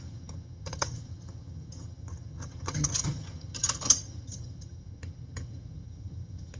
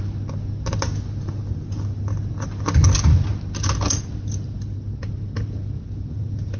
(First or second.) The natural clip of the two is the second